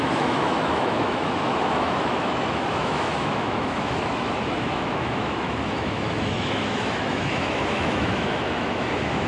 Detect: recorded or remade remade